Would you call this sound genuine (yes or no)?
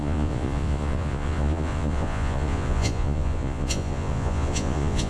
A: no